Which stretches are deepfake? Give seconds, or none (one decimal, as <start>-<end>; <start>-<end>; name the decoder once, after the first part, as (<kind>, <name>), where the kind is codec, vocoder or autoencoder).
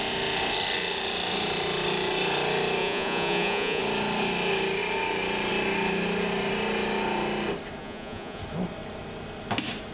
2.8-3.8 (vocoder, Vocos); 7.8-8.4